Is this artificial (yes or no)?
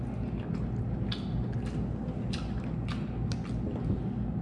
no